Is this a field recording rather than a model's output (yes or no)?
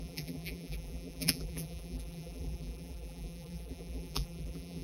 no